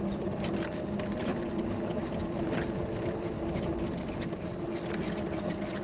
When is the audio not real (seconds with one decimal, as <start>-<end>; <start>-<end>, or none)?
none